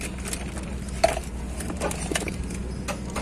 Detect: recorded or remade recorded